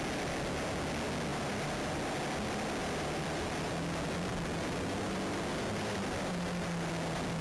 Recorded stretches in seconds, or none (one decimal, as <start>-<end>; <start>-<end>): 0.0-1.3; 2.1-2.8; 3.7-4.3; 6.9-7.4